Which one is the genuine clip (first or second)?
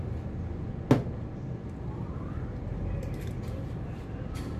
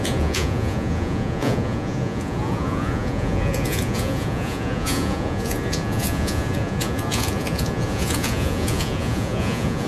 first